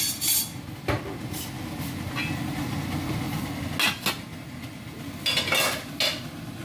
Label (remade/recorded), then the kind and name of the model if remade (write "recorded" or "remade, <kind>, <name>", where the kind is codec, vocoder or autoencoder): recorded